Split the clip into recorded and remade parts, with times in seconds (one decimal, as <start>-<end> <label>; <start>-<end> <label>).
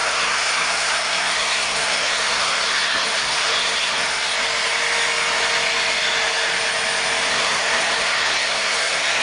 0.0-4.3 remade; 4.3-7.3 recorded; 7.3-9.2 remade